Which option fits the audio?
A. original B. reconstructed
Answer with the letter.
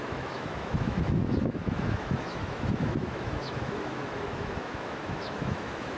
B